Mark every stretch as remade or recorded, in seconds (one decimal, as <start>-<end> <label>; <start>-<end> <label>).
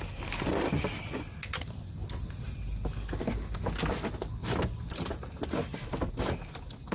0.0-6.9 recorded